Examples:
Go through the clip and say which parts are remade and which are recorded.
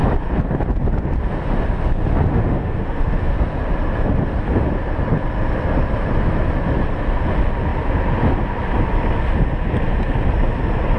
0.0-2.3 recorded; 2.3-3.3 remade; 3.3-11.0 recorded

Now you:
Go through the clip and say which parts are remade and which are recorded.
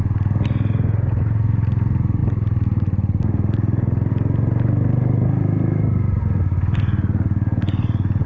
0.0-8.3 recorded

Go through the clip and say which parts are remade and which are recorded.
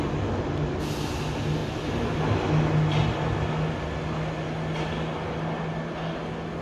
0.0-6.6 recorded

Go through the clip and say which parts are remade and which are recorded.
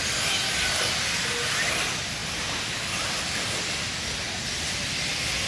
0.0-5.5 recorded